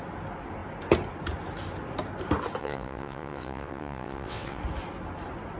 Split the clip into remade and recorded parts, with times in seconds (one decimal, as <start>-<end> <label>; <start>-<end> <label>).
0.0-2.6 recorded; 2.6-4.6 remade; 4.6-5.6 recorded